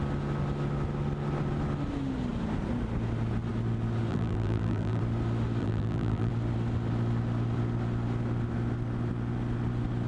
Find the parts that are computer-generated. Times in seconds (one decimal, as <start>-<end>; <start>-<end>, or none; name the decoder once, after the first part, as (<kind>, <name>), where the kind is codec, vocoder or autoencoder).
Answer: 4.1-5.0 (vocoder, BigVGAN v2); 5.6-6.3